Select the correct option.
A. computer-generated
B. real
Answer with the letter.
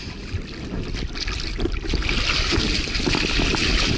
B